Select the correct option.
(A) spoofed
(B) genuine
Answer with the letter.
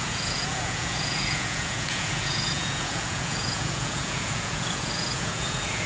A